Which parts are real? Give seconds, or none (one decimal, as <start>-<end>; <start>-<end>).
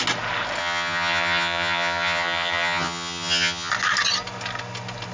0.0-0.6; 3.7-5.1